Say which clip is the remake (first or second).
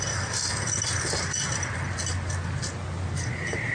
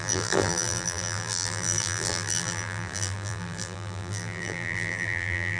second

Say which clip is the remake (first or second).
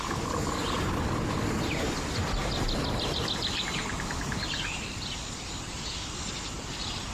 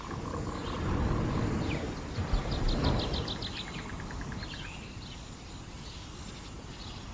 first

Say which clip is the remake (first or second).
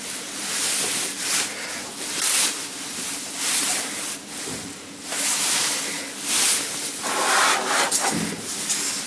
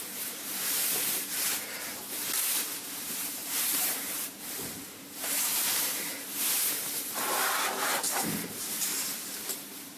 second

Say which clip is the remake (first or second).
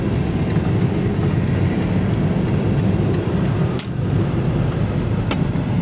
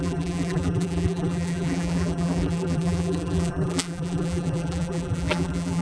second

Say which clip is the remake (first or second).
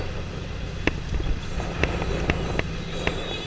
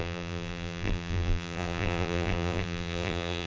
second